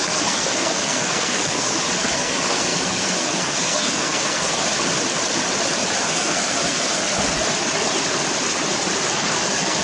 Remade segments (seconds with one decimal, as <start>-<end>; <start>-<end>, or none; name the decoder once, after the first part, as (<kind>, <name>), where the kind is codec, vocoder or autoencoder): 0.0-4.6 (codec, SNAC); 6.0-7.0; 9.1-9.8